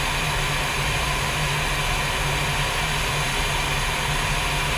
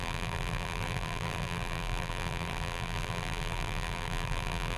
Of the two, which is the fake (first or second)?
second